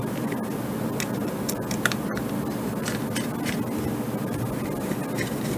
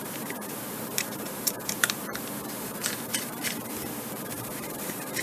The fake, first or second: second